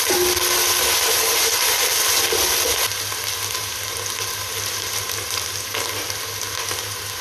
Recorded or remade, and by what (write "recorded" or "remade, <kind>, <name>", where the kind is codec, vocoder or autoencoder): recorded